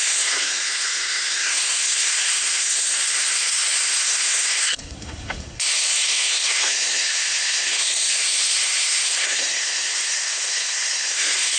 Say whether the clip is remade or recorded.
remade